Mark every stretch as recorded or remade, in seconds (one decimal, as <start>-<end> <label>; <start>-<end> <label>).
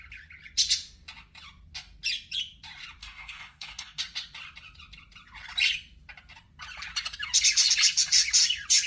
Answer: 0.0-3.0 recorded; 3.0-4.0 remade; 4.0-8.9 recorded